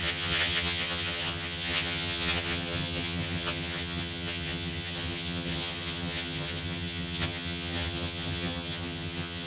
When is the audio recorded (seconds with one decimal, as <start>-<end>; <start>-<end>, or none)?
none